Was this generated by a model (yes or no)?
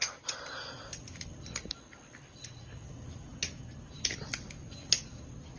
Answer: no